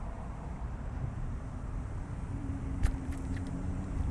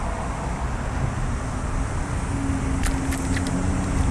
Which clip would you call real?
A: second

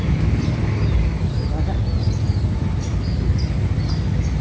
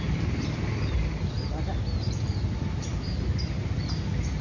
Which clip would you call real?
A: first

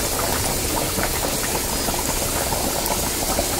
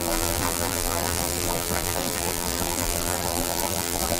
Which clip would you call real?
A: first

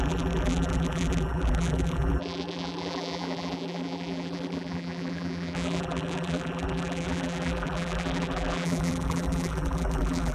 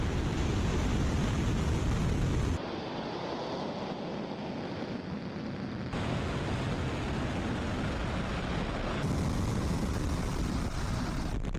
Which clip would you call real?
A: second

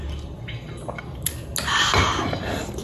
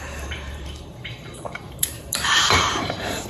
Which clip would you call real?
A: first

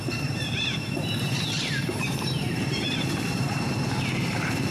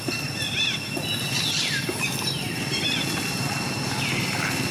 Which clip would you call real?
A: second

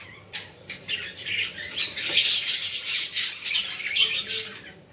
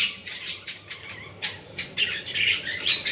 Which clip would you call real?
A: first